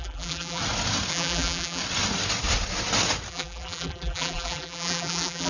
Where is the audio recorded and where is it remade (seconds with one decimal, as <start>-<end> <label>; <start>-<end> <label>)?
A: 0.0-0.6 remade; 0.6-1.1 recorded; 1.1-1.8 remade; 1.8-3.3 recorded; 3.3-5.5 remade